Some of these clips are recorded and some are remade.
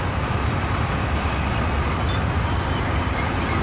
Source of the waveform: recorded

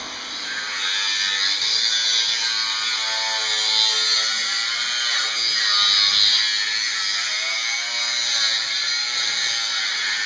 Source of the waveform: recorded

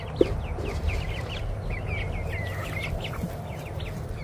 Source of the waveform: recorded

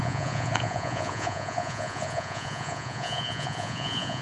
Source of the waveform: remade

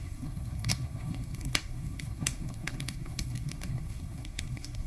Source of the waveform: remade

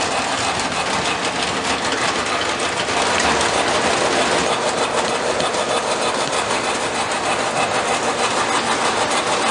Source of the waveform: recorded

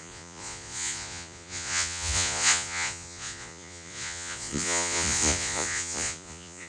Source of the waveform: remade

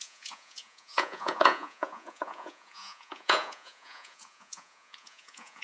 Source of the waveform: remade